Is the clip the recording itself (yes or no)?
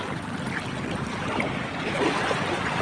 no